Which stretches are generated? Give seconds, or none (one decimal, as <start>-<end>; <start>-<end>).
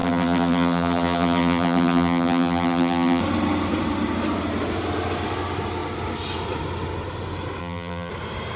0.0-3.2; 7.6-8.1